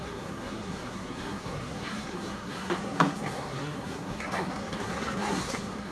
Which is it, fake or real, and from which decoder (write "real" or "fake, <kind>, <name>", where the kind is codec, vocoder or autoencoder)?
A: fake, codec, SNAC